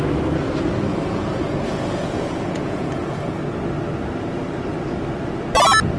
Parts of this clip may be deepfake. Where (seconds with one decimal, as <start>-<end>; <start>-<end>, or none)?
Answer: 0.9-3.4